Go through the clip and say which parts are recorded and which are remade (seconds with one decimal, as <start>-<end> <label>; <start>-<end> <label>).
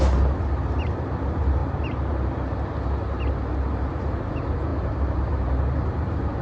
0.0-6.4 recorded